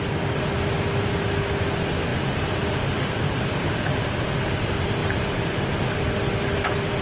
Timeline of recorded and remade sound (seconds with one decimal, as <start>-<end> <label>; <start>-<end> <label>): 0.0-5.0 recorded; 5.0-5.6 remade; 5.6-7.0 recorded